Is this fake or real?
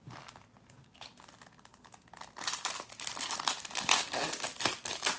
real